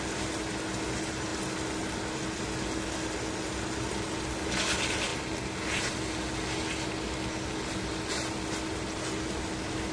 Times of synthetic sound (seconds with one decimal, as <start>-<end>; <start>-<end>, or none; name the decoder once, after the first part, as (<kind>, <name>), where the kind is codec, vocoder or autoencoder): none